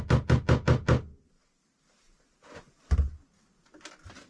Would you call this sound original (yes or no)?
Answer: yes